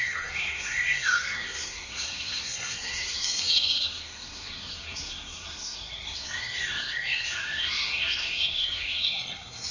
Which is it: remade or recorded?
remade